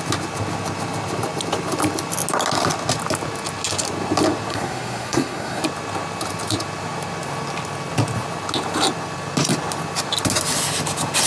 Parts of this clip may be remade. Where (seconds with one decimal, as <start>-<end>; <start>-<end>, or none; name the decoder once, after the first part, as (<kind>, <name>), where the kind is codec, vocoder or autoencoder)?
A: 4.5-5.6 (codec, SNAC)